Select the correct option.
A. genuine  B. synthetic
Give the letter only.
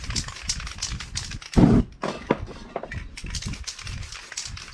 A